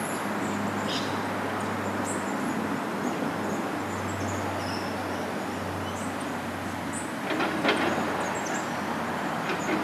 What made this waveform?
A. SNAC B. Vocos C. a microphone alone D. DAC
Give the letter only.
C